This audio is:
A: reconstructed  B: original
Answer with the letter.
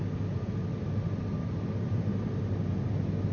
B